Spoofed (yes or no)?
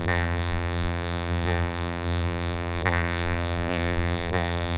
yes